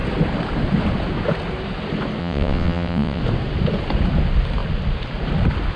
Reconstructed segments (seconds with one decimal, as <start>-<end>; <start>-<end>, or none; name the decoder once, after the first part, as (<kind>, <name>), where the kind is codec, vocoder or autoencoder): 2.2-3.2 (vocoder, WaveNeXt)